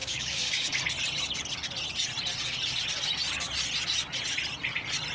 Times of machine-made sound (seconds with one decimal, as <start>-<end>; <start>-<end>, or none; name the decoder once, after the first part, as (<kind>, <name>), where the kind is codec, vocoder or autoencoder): 0.0-0.7 (codec, DAC)